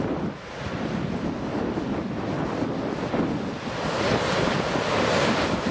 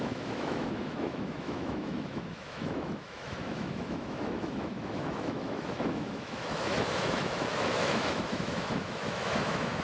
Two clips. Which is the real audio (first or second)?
first